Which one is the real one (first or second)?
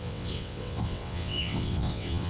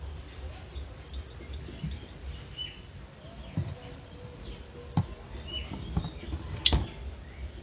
second